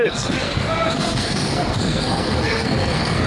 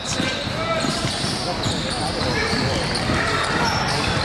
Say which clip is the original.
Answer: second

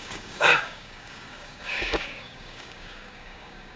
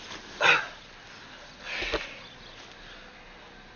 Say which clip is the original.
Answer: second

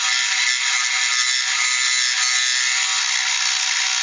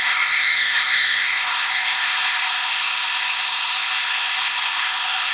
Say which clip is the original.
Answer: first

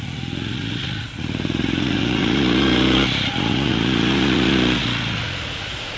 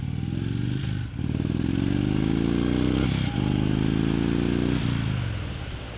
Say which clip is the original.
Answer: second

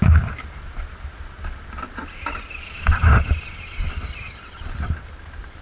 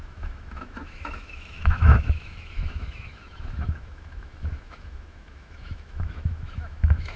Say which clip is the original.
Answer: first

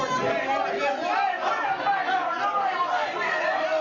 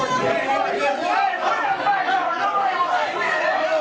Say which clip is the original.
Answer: first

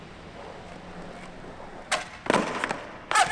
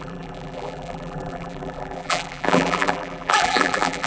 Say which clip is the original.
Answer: first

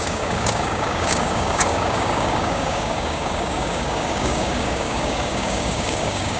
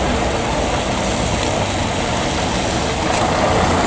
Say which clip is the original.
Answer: second